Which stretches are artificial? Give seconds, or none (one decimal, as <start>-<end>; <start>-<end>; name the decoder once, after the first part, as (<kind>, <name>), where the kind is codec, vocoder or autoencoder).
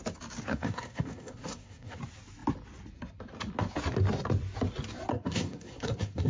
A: 0.5-2.0 (codec, SNAC); 5.1-6.3